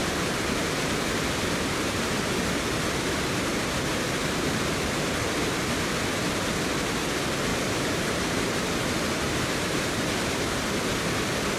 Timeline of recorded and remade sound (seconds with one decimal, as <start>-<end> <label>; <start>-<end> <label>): 0.0-2.2 remade; 2.2-3.5 recorded; 3.5-5.4 remade; 5.4-7.5 recorded; 7.5-10.4 remade; 10.4-11.6 recorded